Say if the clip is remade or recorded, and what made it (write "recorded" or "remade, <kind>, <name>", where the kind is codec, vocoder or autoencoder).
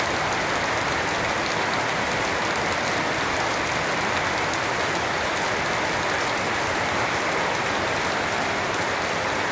recorded